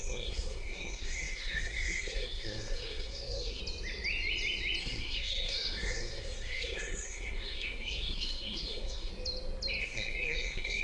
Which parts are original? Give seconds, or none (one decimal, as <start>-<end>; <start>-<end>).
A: 3.6-4.8; 9.1-9.8